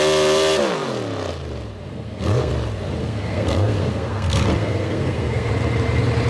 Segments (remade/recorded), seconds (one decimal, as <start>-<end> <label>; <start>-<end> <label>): 0.0-1.9 recorded; 1.9-2.5 remade; 2.5-3.0 recorded; 3.0-5.5 remade; 5.5-6.3 recorded